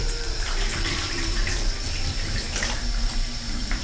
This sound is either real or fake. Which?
fake